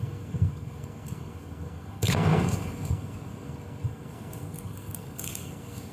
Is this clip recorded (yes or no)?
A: no